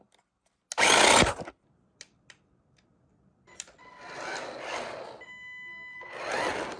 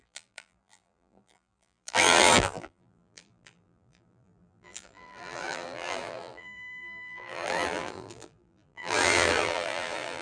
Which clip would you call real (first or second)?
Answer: first